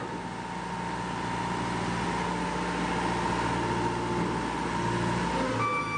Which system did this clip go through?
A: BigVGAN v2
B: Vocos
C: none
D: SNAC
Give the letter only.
C